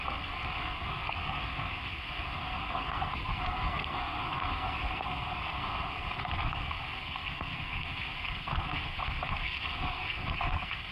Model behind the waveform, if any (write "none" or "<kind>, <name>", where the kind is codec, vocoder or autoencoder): codec, SNAC